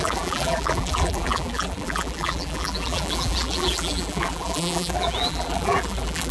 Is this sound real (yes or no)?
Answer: no